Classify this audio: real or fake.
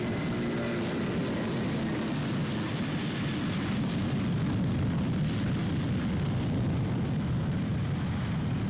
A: real